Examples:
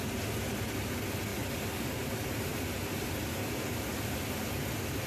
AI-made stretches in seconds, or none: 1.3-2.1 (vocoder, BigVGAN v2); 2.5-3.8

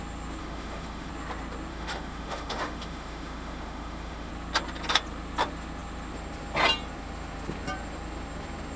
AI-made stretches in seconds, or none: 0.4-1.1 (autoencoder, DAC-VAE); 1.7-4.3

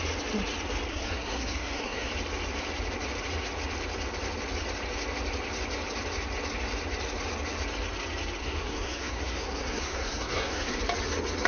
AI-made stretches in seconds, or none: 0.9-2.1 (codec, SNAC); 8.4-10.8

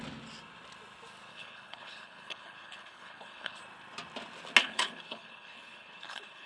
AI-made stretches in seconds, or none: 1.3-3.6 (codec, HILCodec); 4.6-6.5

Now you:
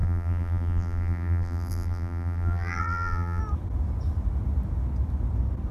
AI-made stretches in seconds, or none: 0.0-3.4 (vocoder, BigVGAN v2)

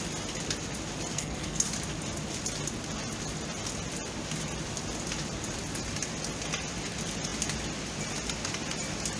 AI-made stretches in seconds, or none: 1.1-1.7 (codec, SNAC)